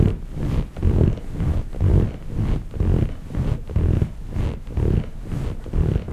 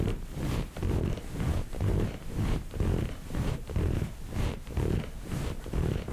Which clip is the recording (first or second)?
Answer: first